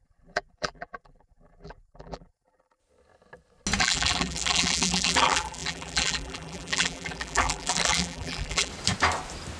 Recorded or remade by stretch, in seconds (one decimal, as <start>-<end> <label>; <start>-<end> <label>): 0.0-2.8 remade; 2.8-3.8 recorded; 3.8-8.7 remade; 8.7-9.6 recorded